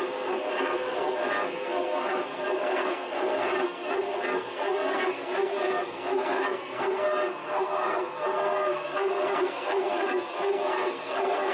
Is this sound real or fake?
fake